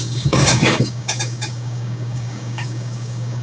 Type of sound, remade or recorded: remade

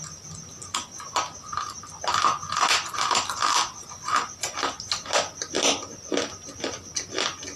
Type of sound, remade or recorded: recorded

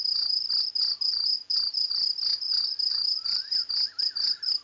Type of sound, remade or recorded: recorded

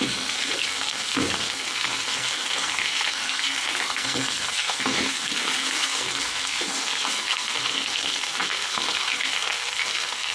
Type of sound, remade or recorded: remade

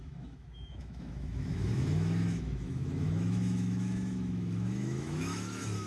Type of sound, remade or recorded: remade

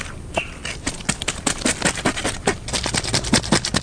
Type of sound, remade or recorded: recorded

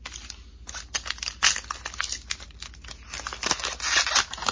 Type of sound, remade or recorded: recorded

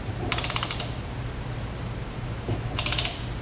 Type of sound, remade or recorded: remade